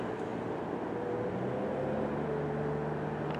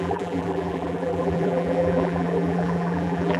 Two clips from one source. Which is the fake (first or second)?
second